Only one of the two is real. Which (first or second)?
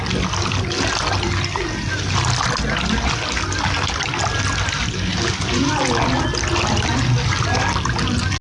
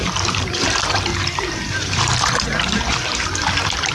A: first